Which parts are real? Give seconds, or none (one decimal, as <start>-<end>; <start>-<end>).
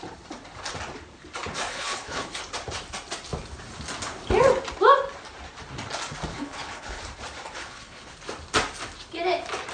0.0-1.7; 2.4-6.3; 7.0-7.6; 8.1-9.7